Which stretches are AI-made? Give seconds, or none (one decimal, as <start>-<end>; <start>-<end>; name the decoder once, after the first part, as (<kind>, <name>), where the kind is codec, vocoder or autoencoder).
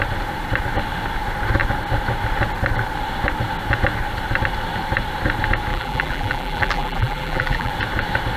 5.7-7.7 (vocoder, BigVGAN v2)